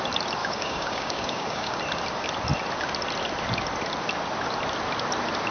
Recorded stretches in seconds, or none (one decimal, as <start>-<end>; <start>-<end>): 0.0-0.4; 1.8-5.5